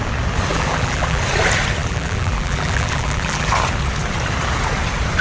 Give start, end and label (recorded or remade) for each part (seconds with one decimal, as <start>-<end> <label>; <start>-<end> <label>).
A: 0.0-0.5 recorded; 0.5-1.2 remade; 1.2-1.8 recorded; 1.8-3.5 remade; 3.5-5.2 recorded